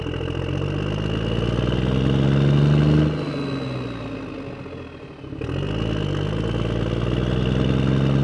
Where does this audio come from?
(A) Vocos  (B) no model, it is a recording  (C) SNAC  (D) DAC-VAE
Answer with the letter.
B